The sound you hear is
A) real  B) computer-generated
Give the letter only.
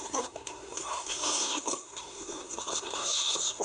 B